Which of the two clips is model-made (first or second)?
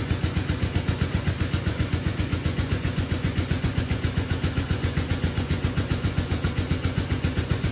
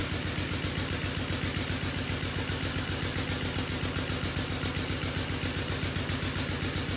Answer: first